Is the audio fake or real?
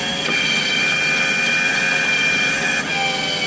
real